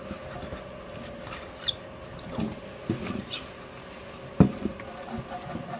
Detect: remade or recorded recorded